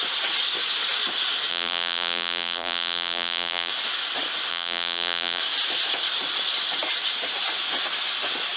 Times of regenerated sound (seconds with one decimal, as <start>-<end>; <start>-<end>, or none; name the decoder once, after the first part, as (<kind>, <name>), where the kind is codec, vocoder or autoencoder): 1.5-3.7 (vocoder, BigVGAN v2); 4.5-5.4